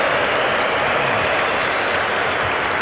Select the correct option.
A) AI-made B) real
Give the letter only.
A